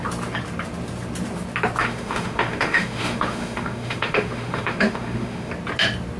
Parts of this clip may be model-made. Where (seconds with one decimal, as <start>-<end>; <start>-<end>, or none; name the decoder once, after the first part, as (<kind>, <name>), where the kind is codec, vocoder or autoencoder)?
1.8-5.5 (autoencoder, DAC-VAE)